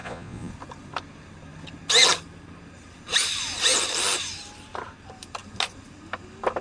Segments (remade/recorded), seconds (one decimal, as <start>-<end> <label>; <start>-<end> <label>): 0.0-0.5 remade; 0.5-6.6 recorded